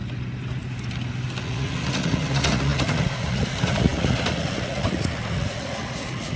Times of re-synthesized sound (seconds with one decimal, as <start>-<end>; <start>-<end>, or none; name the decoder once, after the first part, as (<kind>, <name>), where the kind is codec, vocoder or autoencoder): 1.4-6.4 (vocoder, Vocos)